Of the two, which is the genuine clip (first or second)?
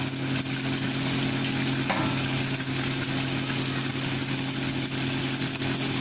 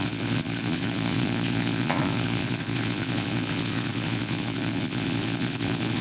first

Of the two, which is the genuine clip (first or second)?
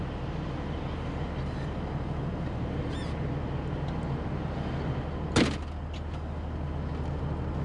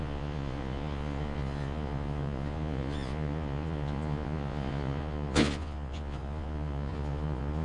first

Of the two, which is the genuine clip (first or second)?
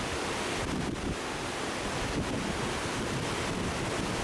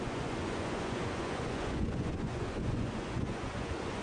first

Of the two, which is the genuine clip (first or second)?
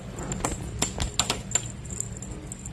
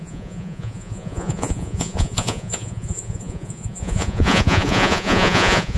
first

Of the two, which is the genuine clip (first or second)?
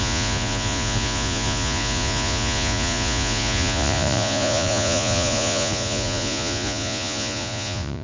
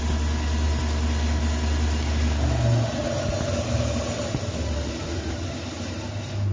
second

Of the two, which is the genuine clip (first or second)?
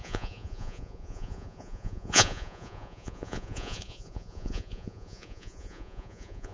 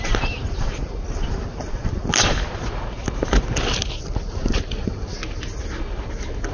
second